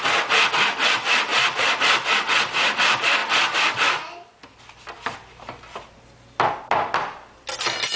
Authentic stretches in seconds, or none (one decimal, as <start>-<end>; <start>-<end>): 0.0-8.0

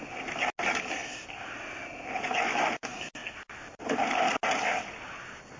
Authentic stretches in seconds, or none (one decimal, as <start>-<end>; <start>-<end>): 0.0-5.6

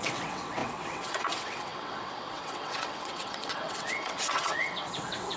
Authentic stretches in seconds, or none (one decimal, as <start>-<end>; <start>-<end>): none

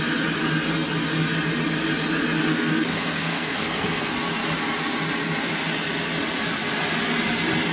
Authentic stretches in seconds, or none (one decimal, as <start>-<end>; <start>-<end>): 0.0-2.5; 4.1-7.7

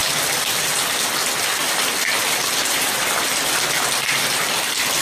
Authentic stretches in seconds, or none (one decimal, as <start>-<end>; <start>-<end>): 0.6-1.6; 4.4-5.0

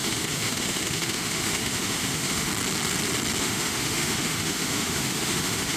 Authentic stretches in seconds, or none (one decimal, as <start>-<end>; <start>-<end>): 2.5-3.4

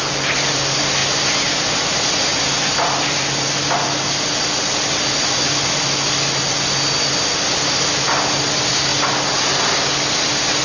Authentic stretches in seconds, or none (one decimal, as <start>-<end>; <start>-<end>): 0.0-10.6